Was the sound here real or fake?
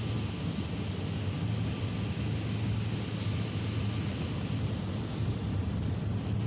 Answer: real